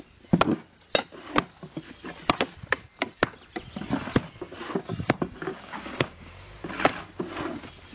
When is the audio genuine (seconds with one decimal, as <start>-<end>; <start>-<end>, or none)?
0.0-5.5; 6.3-7.9